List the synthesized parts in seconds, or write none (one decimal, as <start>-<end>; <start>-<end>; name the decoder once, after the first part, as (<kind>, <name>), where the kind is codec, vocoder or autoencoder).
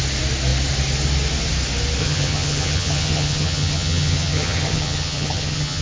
2.0-5.8 (vocoder, HiFi-GAN)